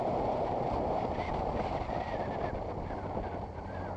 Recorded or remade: recorded